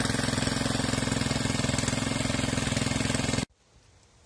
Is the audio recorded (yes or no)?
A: yes